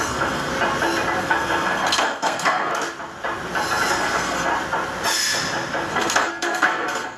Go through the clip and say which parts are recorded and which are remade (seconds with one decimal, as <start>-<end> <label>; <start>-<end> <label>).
0.0-0.5 remade; 0.5-1.2 recorded; 1.2-2.7 remade; 2.7-3.9 recorded; 3.9-4.5 remade; 4.5-5.9 recorded; 5.9-7.2 remade